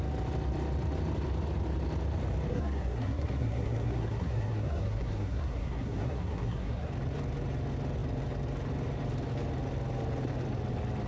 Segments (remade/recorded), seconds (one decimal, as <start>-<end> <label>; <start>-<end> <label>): 0.0-2.5 recorded; 2.5-6.9 remade; 6.9-11.1 recorded